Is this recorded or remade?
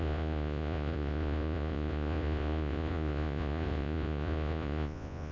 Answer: remade